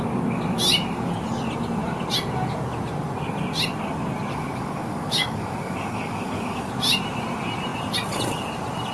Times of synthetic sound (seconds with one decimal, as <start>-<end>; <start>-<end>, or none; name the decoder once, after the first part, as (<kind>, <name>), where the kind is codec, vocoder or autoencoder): 4.3-6.7 (codec, DAC)